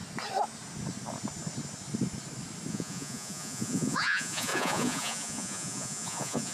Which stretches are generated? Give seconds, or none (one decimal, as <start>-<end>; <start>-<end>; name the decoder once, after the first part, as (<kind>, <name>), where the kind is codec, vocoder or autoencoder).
2.7-6.5 (vocoder, Vocos)